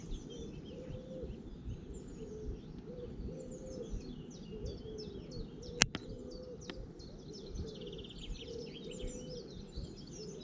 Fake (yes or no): no